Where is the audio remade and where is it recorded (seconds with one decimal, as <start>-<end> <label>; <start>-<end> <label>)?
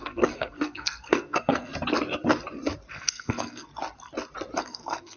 0.0-1.7 remade; 1.7-2.9 recorded; 2.9-3.7 remade; 3.7-4.6 recorded; 4.6-5.2 remade